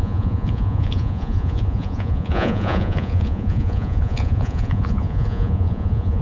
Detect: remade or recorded remade